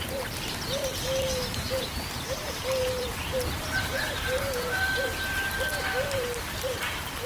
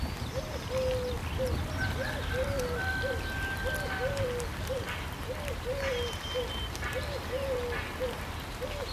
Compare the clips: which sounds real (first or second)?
second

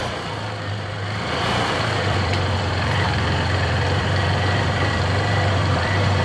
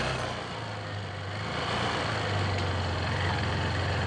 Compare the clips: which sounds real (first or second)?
second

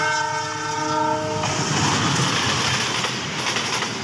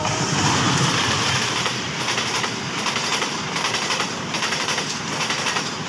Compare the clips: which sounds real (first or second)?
first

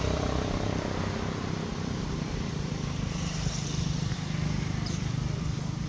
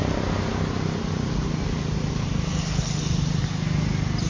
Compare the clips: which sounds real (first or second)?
second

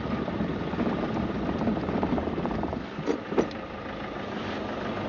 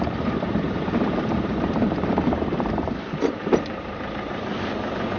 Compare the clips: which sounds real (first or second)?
first